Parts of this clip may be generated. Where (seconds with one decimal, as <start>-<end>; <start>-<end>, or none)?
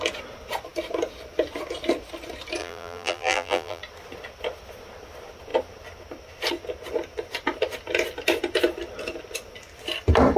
2.6-3.8